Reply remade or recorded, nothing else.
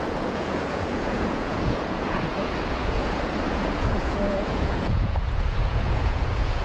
remade